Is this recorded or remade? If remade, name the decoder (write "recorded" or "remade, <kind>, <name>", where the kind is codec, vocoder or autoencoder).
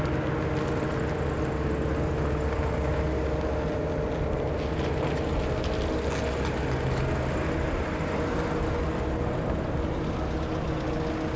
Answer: recorded